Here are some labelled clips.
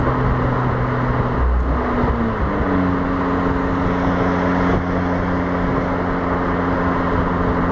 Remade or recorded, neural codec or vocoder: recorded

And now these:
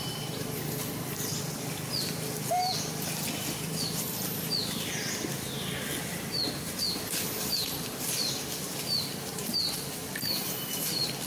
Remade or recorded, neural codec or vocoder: recorded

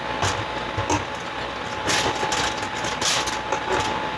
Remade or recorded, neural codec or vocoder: recorded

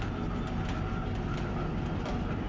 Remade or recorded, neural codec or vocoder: recorded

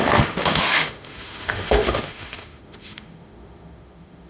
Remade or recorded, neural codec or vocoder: remade, autoencoder, DAC-VAE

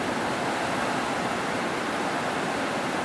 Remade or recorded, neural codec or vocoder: recorded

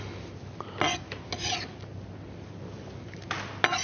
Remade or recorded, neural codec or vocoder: recorded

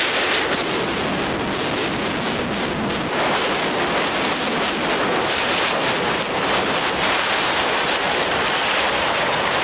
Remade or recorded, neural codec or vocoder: recorded